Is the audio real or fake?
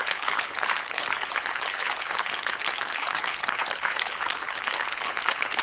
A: fake